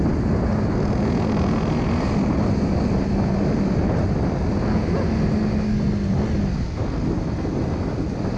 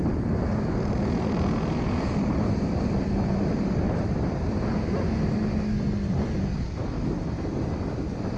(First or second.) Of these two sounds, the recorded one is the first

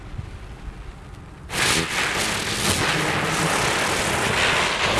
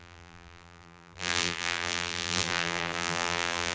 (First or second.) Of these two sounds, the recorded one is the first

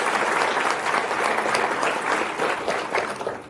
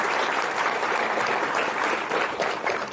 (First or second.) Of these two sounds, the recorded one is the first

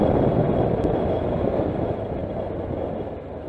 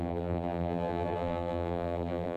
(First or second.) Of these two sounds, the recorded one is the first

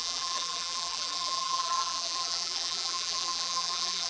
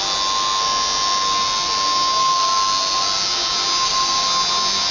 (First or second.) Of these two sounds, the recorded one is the second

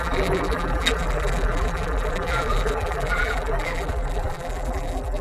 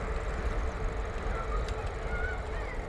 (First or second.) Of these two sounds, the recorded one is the second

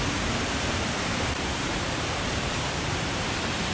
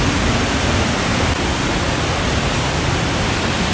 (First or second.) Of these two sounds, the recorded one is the second